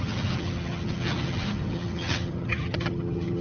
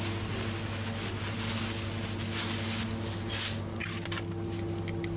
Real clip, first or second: second